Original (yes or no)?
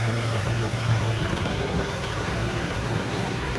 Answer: no